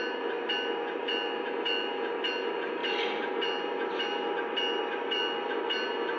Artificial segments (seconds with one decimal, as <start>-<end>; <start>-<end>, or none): none